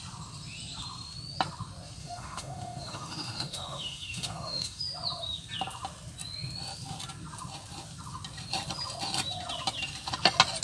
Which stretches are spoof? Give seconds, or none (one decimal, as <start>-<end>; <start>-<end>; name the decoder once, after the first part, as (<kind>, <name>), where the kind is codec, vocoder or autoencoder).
2.0-4.8 (autoencoder, DAC-VAE)